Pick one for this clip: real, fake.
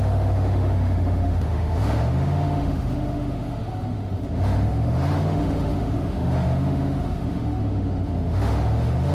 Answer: fake